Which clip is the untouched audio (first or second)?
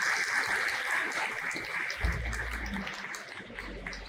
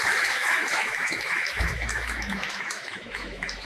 first